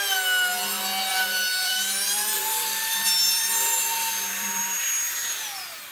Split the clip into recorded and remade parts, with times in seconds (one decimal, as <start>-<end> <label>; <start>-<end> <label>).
0.0-1.1 recorded; 1.1-4.6 remade; 4.6-5.9 recorded